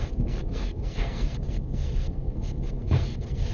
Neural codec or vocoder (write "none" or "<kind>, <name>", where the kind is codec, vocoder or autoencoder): codec, SNAC